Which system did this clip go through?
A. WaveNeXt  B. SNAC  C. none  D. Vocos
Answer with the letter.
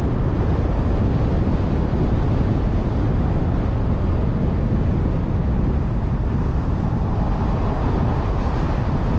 C